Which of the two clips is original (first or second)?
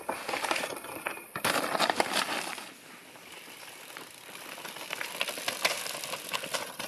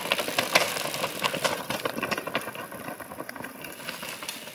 second